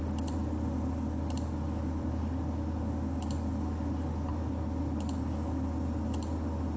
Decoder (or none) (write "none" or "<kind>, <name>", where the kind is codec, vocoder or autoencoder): none